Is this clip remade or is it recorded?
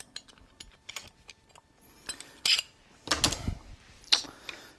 recorded